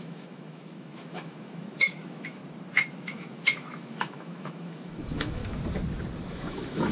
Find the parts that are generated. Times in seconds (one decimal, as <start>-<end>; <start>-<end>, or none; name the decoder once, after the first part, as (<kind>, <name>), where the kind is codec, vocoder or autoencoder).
0.0-2.4 (autoencoder, DAC-VAE); 2.9-5.4; 6.3-6.9